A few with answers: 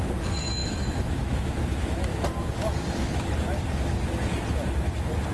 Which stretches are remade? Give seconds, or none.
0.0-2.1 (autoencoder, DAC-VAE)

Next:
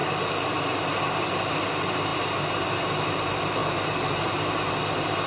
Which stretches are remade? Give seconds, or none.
none

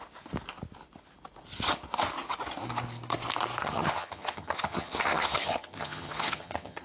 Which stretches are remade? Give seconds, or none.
3.6-6.8 (vocoder, HiFi-GAN)

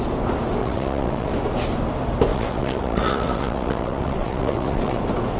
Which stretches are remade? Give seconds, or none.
0.6-1.3 (vocoder, WaveNeXt); 2.3-5.0

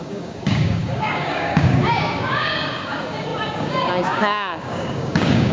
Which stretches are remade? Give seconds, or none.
0.0-5.5 (codec, DAC)

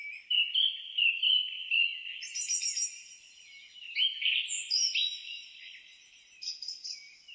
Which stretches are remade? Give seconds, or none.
none

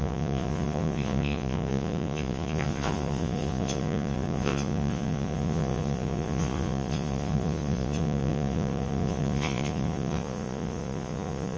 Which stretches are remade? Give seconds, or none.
0.0-11.6 (vocoder, Vocos)